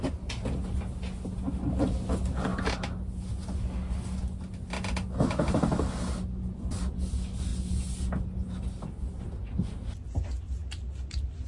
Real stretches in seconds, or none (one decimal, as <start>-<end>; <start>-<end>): 0.0-11.5